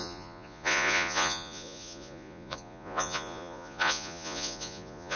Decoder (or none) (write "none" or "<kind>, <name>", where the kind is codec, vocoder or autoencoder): vocoder, Vocos